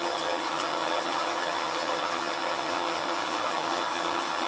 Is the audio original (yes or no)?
no